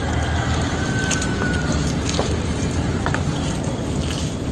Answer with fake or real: real